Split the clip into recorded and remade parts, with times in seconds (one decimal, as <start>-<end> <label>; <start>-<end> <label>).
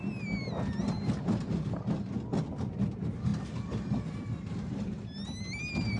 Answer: 0.0-6.0 recorded